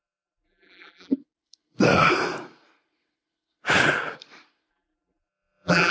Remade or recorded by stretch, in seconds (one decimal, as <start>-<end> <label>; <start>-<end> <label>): 0.0-1.2 remade; 1.2-4.7 recorded; 4.7-5.9 remade